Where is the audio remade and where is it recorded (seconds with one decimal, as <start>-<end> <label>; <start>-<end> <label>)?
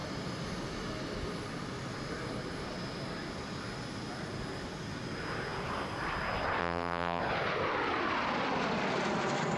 0.0-6.6 recorded; 6.6-7.2 remade; 7.2-9.6 recorded